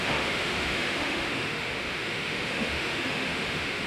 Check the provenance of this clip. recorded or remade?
remade